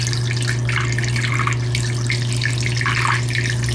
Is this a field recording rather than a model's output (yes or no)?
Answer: yes